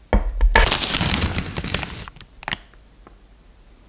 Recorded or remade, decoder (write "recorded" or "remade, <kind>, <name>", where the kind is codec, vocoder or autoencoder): recorded